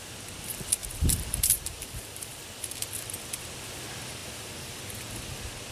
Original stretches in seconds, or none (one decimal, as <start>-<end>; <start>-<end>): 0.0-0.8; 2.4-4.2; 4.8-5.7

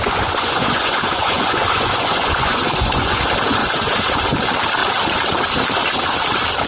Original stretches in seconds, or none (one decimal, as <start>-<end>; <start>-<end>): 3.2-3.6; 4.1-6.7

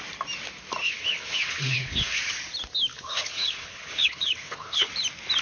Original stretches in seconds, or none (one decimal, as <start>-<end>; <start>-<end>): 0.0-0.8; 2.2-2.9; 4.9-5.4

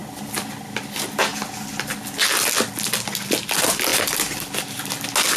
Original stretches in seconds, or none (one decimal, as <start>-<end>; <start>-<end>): 0.0-3.9; 4.8-5.4

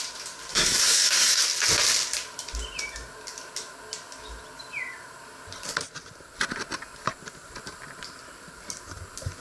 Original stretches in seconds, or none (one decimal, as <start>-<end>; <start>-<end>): 0.0-0.5; 1.4-9.4